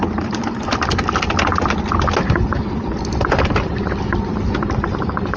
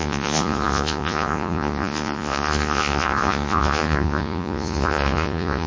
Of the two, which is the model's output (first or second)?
second